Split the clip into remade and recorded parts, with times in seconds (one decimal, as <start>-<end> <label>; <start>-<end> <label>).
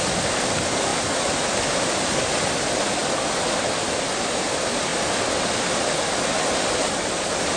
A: 0.0-0.9 remade; 0.9-2.2 recorded; 2.2-3.0 remade; 3.0-3.8 recorded; 3.8-4.9 remade; 4.9-5.5 recorded; 5.5-7.6 remade